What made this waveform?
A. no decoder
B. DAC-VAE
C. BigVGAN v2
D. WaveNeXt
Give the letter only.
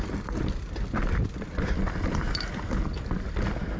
A